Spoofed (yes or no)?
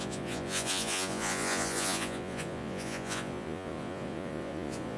yes